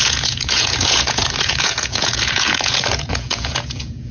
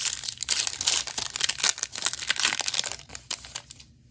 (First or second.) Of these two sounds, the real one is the second